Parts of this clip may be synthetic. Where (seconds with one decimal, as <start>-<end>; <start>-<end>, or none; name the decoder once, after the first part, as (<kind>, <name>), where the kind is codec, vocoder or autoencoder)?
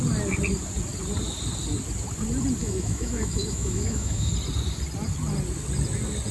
2.6-4.3 (autoencoder, DAC-VAE)